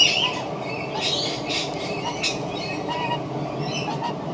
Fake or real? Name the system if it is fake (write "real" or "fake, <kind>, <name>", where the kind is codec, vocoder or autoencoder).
fake, vocoder, BigVGAN v2